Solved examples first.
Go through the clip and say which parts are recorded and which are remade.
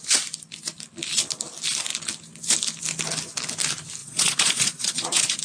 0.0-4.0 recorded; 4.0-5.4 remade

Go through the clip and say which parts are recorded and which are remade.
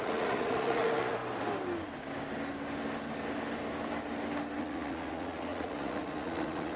0.0-1.2 remade; 1.2-4.6 recorded; 4.6-6.8 remade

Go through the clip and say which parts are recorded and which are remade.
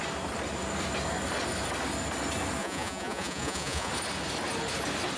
0.0-2.6 recorded; 2.6-3.9 remade; 3.9-5.2 recorded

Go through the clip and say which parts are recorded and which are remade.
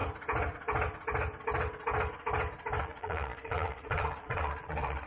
0.0-2.8 recorded; 2.8-5.1 remade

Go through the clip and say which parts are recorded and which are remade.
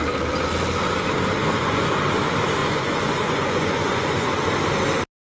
0.0-1.4 recorded; 1.4-1.9 remade; 1.9-2.6 recorded; 2.6-4.3 remade; 4.3-5.3 recorded